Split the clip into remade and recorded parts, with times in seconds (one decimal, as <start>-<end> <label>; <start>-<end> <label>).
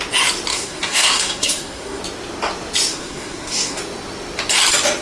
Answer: 0.0-0.5 recorded; 0.5-2.0 remade; 2.0-2.9 recorded; 2.9-3.8 remade; 3.8-5.0 recorded